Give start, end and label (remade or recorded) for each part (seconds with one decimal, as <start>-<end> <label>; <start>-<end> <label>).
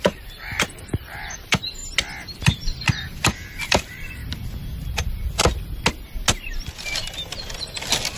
0.0-1.8 remade; 1.8-2.9 recorded; 2.9-4.2 remade; 4.2-4.9 recorded; 4.9-5.4 remade; 5.4-8.2 recorded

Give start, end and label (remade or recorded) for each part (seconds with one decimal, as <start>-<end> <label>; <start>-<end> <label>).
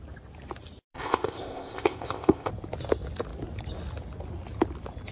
0.0-1.0 recorded; 1.0-2.5 remade; 2.5-5.1 recorded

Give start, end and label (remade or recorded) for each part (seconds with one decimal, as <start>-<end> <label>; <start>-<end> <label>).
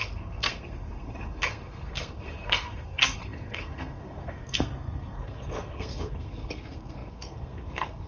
0.0-8.1 remade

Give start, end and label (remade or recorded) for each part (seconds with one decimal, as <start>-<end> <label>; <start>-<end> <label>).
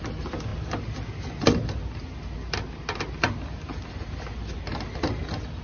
0.0-5.6 recorded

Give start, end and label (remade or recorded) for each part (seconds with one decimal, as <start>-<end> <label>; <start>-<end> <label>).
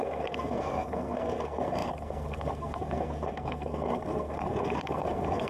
0.0-5.5 remade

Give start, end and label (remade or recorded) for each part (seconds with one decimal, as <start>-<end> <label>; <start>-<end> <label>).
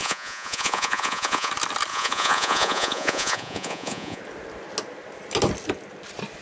0.0-1.5 remade; 1.5-1.9 recorded; 1.9-4.2 remade; 4.2-6.4 recorded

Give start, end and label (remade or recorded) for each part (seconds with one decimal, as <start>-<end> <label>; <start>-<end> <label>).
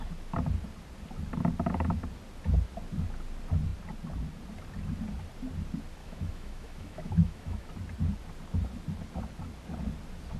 0.0-6.0 recorded; 6.0-7.7 remade; 7.7-10.4 recorded